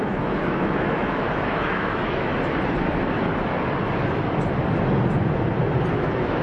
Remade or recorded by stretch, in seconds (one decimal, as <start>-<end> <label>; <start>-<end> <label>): 0.0-2.3 remade; 2.3-5.9 recorded; 5.9-6.4 remade